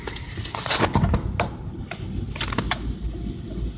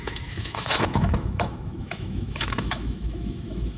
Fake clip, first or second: second